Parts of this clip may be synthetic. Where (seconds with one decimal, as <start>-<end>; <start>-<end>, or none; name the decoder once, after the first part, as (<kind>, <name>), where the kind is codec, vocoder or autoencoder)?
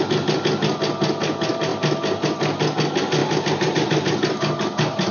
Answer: none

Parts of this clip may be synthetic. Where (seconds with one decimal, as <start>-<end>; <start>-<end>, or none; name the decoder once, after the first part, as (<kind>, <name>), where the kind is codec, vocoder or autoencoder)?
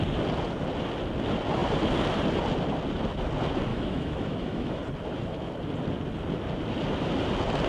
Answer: 3.7-4.8 (autoencoder, DAC-VAE)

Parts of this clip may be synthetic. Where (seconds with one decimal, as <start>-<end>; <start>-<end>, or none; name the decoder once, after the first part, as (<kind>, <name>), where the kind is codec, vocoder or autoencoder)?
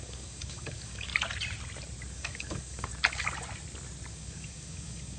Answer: 0.0-1.1 (codec, DAC); 2.1-2.9; 4.1-5.2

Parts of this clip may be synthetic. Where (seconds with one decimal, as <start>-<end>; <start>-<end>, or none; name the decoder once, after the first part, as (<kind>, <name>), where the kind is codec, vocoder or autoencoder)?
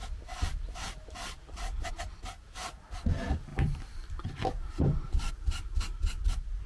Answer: 0.0-1.9 (vocoder, BigVGAN v2); 3.5-5.3